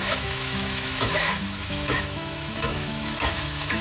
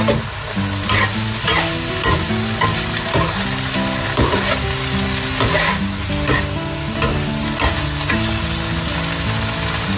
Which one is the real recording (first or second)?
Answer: second